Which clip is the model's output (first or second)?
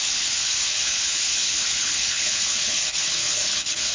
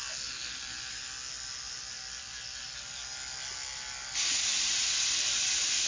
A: first